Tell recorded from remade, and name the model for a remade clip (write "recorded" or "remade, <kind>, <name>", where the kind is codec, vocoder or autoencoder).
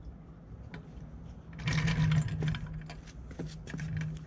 recorded